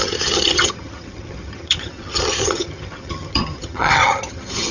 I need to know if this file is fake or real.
fake